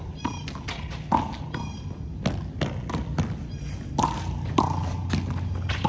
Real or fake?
real